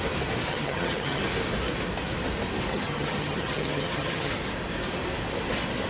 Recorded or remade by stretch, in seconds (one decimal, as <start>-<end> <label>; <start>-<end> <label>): 0.0-0.5 recorded; 0.5-1.2 remade; 1.2-2.7 recorded; 2.7-4.3 remade; 4.3-5.9 recorded